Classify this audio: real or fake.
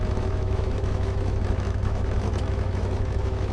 fake